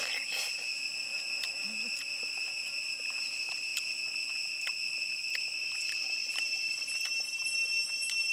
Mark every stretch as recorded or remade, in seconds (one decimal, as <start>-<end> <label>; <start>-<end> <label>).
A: 0.0-6.2 recorded; 6.2-6.9 remade; 6.9-8.3 recorded